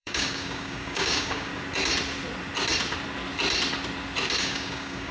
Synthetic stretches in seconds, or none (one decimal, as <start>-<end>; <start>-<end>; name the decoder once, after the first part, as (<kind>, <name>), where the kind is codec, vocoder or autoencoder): 0.0-1.5 (codec, DAC); 4.4-5.1